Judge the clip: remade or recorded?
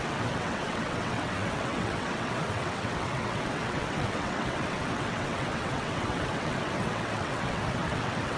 remade